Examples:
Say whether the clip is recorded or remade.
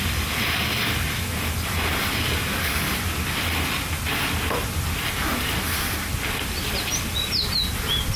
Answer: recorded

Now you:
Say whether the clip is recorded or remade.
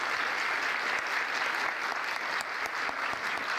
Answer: recorded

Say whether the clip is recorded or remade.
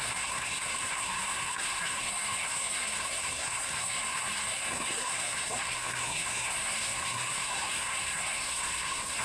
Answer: remade